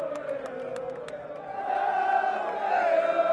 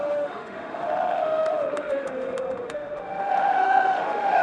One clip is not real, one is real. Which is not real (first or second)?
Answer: second